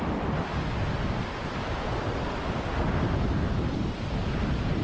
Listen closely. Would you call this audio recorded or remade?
recorded